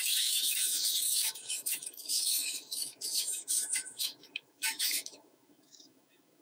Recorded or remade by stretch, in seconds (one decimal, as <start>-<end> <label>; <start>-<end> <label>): 0.0-6.4 remade